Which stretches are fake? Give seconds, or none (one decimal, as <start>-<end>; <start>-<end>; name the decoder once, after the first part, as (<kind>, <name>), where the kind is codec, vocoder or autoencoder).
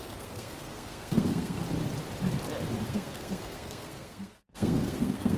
0.0-1.6 (codec, SNAC); 2.9-5.4